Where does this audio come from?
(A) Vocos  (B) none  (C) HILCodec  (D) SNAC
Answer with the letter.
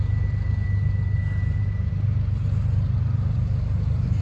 B